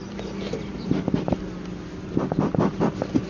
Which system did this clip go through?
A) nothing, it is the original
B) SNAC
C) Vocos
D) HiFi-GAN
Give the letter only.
A